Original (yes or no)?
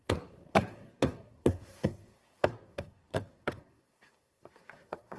no